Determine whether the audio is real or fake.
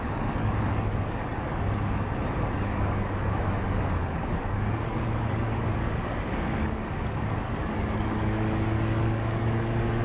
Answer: fake